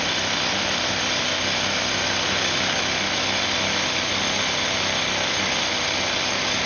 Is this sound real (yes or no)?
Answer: no